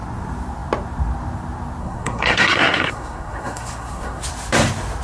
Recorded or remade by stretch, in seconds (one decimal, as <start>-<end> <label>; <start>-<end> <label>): 0.0-1.8 recorded; 1.8-4.2 remade; 4.2-5.0 recorded